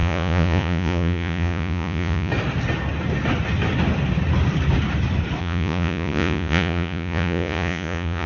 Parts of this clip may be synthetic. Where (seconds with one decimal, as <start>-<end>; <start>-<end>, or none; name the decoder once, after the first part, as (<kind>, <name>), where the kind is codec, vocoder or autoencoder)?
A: 0.0-2.3 (vocoder, Vocos); 5.4-8.3